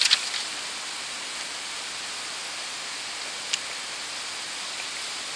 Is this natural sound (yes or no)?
yes